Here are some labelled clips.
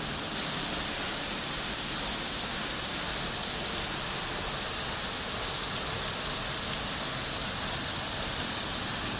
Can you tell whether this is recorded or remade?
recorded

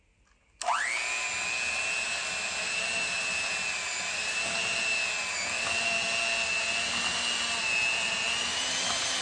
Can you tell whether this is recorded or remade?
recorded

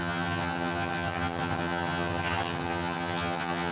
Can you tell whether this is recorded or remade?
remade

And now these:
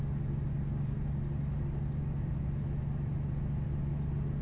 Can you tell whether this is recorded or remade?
recorded